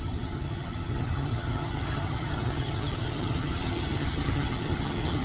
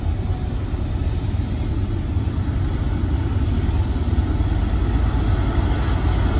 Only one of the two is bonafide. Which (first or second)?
second